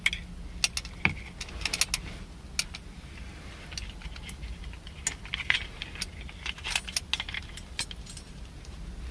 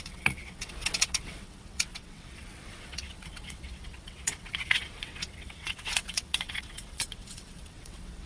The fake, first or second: second